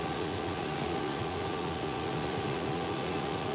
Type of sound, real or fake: fake